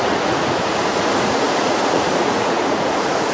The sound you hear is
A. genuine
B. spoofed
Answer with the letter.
B